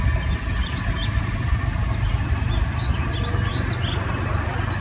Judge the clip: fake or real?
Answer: real